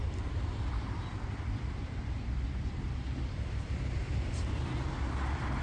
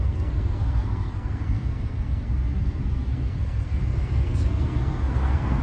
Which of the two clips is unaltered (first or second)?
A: first